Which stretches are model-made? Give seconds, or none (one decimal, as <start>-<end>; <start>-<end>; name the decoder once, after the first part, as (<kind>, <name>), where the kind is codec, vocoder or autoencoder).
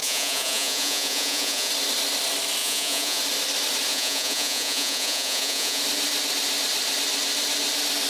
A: 0.0-1.7 (vocoder, Vocos); 2.6-3.2; 3.9-5.8